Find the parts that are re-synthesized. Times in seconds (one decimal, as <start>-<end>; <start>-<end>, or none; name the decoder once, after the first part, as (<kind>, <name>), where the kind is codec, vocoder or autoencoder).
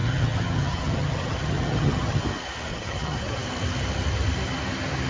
0.0-2.2 (vocoder, HiFi-GAN); 2.7-3.4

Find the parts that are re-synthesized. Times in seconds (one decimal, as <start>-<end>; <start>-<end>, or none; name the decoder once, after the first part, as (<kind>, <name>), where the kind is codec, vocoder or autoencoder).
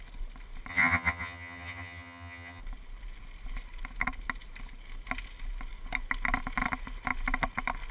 0.7-2.6 (vocoder, HiFi-GAN)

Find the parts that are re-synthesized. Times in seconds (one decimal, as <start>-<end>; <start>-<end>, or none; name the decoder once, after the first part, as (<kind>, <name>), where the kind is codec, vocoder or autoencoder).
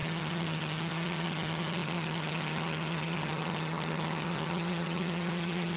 0.0-5.8 (vocoder, HiFi-GAN)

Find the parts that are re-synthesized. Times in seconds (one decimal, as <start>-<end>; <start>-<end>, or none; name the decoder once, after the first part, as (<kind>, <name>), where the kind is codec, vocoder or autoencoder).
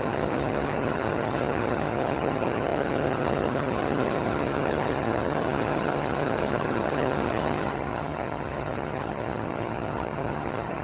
0.0-10.8 (vocoder, HiFi-GAN)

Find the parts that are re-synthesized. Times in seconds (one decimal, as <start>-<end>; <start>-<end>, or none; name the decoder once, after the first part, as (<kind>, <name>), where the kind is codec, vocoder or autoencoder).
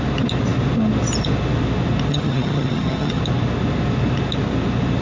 2.1-3.2 (vocoder, HiFi-GAN)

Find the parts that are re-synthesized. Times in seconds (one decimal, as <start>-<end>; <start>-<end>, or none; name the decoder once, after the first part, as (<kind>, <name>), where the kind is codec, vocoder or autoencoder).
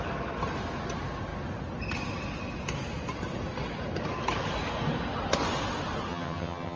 6.1-6.8 (vocoder, HiFi-GAN)